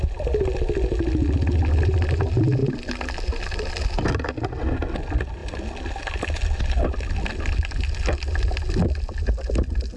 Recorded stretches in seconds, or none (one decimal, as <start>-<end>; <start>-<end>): 0.0-10.0